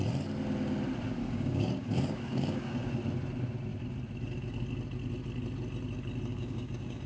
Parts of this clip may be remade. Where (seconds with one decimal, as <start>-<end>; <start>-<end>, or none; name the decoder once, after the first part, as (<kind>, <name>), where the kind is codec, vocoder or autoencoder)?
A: 1.2-2.9 (codec, DAC); 6.3-7.1